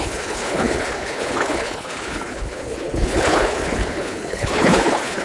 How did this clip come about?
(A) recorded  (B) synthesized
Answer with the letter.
B